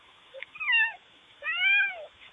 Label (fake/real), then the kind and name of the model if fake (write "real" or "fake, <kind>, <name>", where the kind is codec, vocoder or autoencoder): fake, autoencoder, DAC-VAE